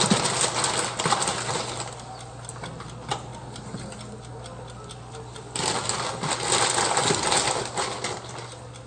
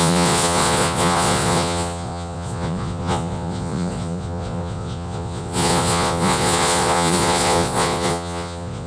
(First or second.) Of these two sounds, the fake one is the second